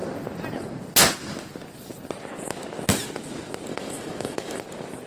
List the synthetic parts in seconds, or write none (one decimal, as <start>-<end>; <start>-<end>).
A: 3.7-4.6